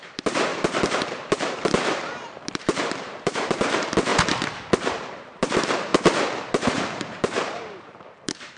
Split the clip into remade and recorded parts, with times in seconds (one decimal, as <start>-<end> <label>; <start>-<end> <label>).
0.0-4.1 remade; 4.1-4.9 recorded; 4.9-5.9 remade; 5.9-6.5 recorded; 6.5-8.6 remade